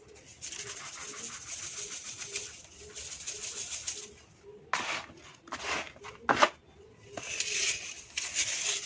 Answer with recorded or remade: recorded